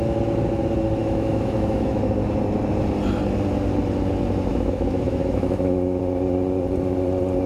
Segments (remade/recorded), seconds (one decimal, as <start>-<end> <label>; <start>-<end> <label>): 0.0-1.0 recorded; 1.0-2.0 remade; 2.0-4.5 recorded; 4.5-6.0 remade; 6.0-7.5 recorded